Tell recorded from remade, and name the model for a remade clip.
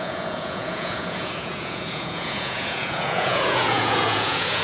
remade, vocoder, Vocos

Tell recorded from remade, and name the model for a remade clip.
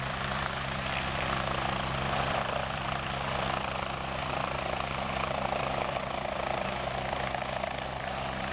remade, vocoder, BigVGAN v2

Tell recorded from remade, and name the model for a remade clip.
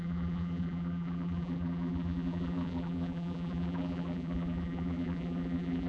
remade, vocoder, BigVGAN v2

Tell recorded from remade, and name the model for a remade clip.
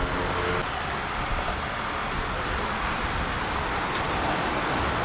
recorded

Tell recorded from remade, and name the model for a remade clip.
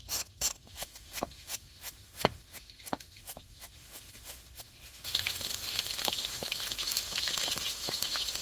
remade, autoencoder, DAC-VAE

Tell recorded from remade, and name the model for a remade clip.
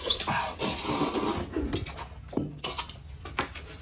recorded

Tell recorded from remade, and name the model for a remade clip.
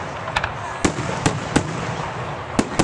recorded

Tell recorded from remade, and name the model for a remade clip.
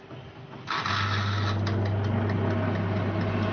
recorded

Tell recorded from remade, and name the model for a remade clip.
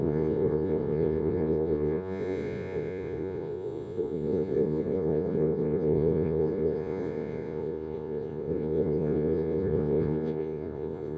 remade, vocoder, Vocos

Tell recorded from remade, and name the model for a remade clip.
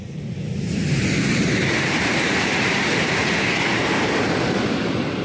remade, vocoder, BigVGAN v2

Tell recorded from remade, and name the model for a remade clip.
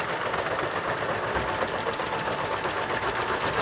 recorded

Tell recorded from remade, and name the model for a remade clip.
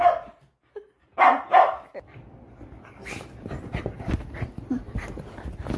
recorded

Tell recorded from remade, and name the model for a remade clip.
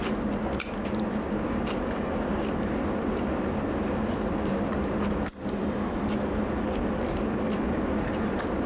recorded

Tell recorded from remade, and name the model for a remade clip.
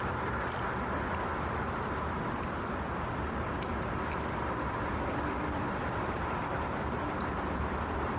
remade, vocoder, BigVGAN v2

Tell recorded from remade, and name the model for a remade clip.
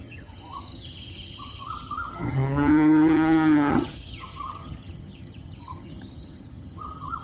remade, vocoder, HiFi-GAN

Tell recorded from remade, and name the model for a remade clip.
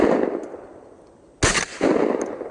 recorded